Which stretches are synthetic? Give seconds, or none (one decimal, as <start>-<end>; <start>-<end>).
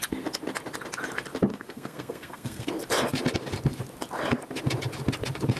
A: 1.5-2.7